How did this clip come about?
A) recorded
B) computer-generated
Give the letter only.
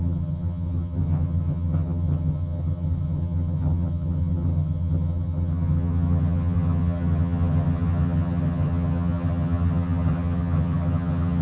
B